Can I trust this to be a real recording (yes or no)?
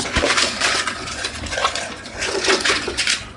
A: no